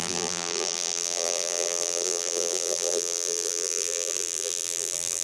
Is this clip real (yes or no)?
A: no